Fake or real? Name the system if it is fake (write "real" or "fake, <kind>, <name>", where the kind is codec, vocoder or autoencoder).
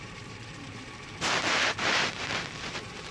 fake, vocoder, BigVGAN v2